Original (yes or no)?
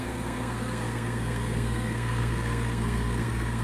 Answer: no